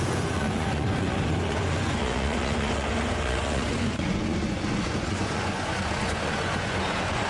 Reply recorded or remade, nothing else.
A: remade